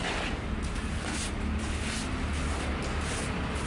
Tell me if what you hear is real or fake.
real